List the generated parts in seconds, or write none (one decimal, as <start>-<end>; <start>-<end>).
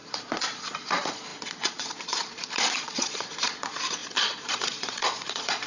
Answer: 0.0-5.7